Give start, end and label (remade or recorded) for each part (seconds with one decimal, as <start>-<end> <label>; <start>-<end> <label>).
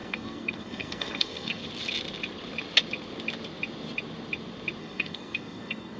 0.0-1.6 remade; 1.6-4.8 recorded; 4.8-6.0 remade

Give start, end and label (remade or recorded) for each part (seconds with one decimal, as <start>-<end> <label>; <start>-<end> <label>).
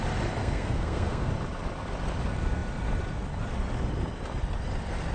0.0-0.4 recorded; 0.4-1.3 remade; 1.3-5.1 recorded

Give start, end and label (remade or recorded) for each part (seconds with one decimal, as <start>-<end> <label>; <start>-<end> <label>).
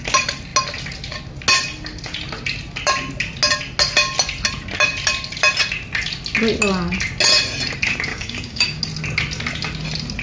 0.0-8.1 recorded; 8.1-8.8 remade; 8.8-10.2 recorded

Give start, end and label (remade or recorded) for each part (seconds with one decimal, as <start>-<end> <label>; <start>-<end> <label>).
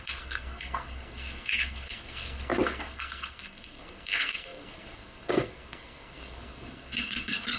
0.0-7.6 remade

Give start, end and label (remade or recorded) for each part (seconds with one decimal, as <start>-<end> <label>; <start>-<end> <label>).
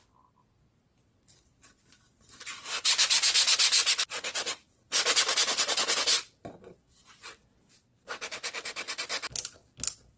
0.0-10.2 recorded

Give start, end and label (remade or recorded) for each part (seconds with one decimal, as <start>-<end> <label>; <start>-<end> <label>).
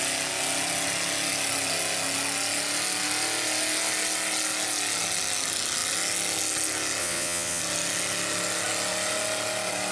0.0-7.0 recorded; 7.0-7.6 remade; 7.6-9.9 recorded